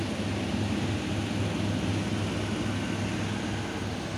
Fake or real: real